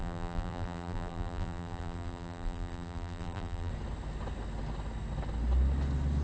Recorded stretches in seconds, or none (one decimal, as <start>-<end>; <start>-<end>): 3.7-6.2